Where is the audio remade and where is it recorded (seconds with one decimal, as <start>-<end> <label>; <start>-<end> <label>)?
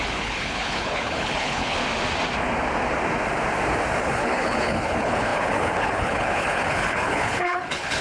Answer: 0.0-1.8 remade; 1.8-4.0 recorded; 4.0-8.0 remade